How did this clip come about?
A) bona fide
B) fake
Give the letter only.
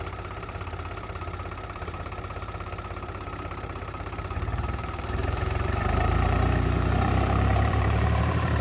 B